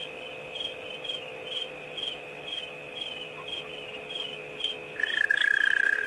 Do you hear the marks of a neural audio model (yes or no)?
no